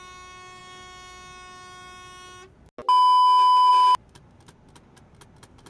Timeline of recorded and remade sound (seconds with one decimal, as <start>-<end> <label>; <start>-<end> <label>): 0.0-5.7 recorded